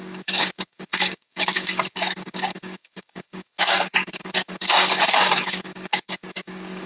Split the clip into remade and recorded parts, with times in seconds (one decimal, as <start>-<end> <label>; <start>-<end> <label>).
0.0-6.9 remade